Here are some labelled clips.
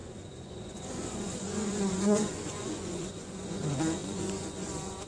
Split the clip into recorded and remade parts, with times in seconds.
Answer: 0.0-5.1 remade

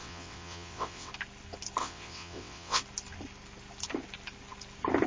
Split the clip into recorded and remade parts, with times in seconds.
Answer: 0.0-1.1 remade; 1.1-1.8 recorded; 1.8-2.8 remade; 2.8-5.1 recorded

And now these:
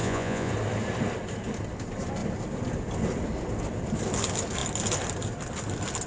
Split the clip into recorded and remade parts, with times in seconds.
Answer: 0.0-0.5 remade; 0.5-6.1 recorded

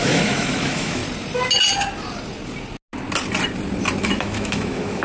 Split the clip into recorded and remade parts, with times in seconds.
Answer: 0.0-1.0 remade; 1.0-4.0 recorded; 4.0-5.0 remade

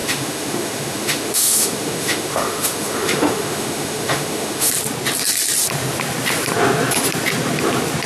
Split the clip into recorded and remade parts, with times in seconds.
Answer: 0.0-4.7 remade; 4.7-8.1 recorded